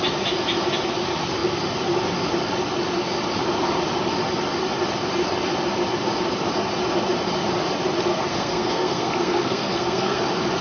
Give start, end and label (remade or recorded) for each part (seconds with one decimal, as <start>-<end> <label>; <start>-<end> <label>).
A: 0.0-8.1 recorded; 8.1-10.2 remade; 10.2-10.6 recorded